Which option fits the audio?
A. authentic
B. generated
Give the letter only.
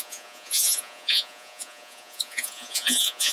B